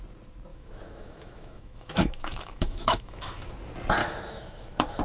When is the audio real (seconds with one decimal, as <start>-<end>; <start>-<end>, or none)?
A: 0.0-0.5; 3.5-4.0